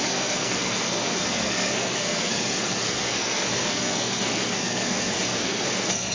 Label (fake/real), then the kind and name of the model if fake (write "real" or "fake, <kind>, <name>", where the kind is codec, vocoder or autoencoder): fake, codec, SNAC